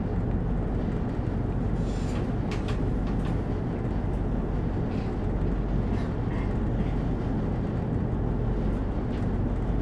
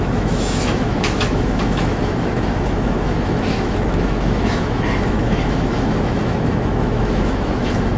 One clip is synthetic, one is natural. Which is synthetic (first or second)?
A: second